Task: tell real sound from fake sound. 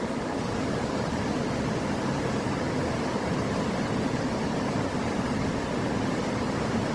real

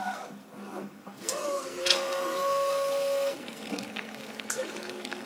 fake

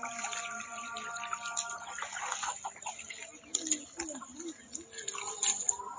real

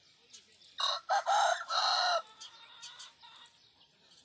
real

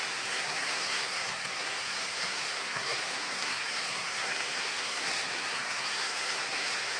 fake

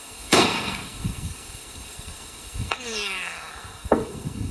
fake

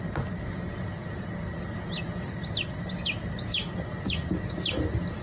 real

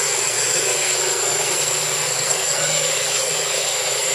fake